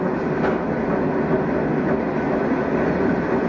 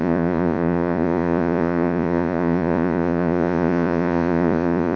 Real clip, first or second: first